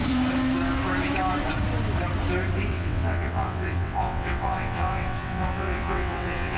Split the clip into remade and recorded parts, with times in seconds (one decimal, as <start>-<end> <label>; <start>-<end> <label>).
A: 0.0-2.7 recorded; 2.7-6.6 remade